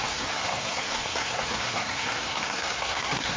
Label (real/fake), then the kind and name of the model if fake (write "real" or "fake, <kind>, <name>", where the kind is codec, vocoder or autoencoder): fake, codec, SNAC